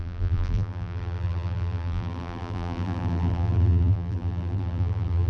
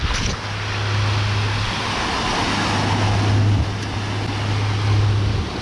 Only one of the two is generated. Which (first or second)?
first